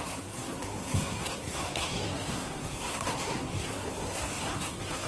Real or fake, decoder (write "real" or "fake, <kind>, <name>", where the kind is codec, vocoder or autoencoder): fake, codec, SNAC